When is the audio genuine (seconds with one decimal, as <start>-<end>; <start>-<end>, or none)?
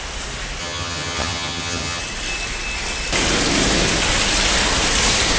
0.0-0.6; 2.0-5.4